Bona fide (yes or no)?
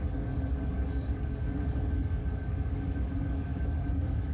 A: no